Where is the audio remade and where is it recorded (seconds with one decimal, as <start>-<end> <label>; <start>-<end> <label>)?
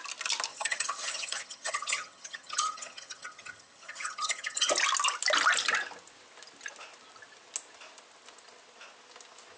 0.0-0.5 recorded; 0.5-4.7 remade; 4.7-9.6 recorded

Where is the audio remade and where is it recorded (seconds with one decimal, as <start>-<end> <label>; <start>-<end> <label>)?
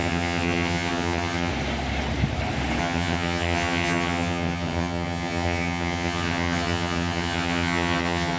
0.0-1.5 remade; 1.5-2.8 recorded; 2.8-8.4 remade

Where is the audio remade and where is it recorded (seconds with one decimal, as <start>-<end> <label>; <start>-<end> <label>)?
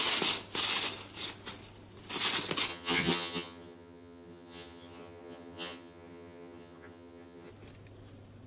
0.0-2.7 recorded; 2.7-7.5 remade; 7.5-8.5 recorded